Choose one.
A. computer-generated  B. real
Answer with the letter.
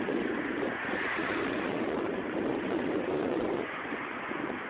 A